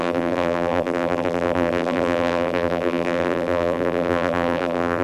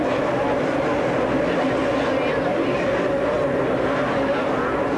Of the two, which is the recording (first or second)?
second